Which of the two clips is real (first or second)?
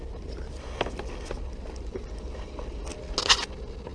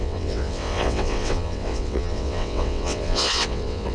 first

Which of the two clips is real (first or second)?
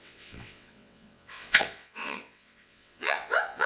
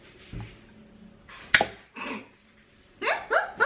second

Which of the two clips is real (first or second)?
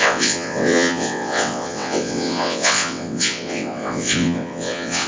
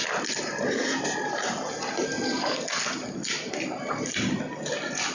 second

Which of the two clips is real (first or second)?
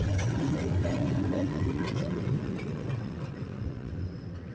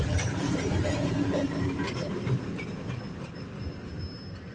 second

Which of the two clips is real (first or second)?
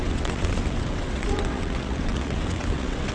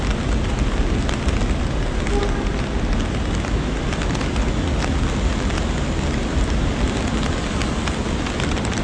second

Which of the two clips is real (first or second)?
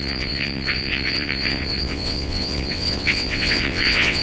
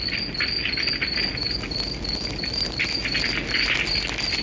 second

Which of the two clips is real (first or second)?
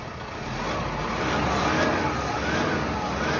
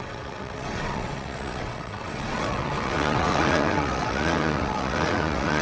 first